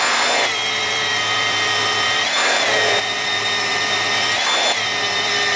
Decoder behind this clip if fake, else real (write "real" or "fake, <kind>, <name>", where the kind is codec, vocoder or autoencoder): fake, vocoder, BigVGAN v2